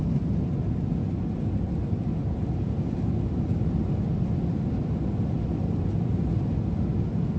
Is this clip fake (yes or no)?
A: no